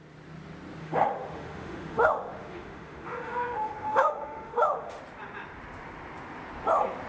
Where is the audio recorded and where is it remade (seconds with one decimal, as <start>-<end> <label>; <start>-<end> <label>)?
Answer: 0.0-0.8 recorded; 0.8-5.0 remade; 5.0-7.1 recorded